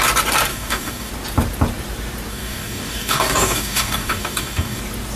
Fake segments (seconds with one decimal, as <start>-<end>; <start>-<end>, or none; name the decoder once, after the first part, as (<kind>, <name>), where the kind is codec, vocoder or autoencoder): 0.5-1.1 (codec, DAC); 2.3-4.8